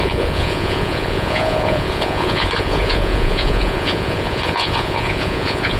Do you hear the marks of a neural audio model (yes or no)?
yes